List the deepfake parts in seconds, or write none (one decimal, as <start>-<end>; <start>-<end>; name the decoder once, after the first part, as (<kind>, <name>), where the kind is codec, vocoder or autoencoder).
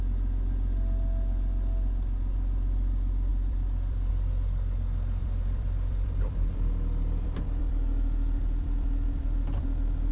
3.3-4.1 (vocoder, BigVGAN v2); 5.2-10.1